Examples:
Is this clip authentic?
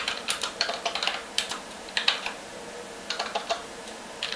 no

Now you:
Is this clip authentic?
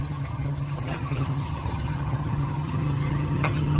no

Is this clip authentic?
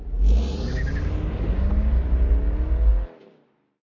yes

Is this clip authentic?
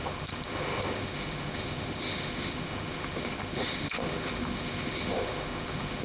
no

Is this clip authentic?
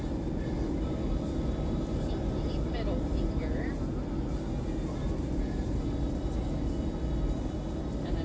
yes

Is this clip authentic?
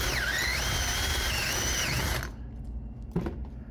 yes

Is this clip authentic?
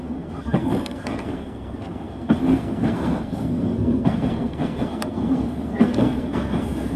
no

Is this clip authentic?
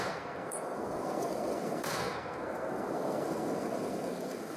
no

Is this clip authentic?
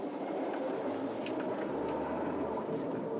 yes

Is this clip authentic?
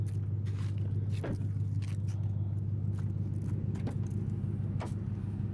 yes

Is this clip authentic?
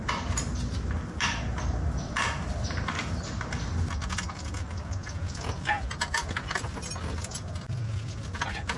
yes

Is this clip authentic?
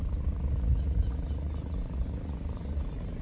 no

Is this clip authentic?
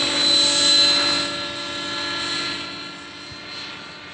yes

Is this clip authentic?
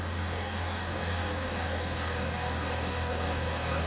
no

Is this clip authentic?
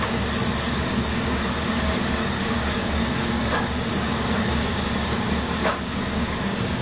no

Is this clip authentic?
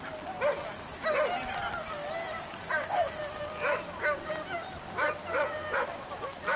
yes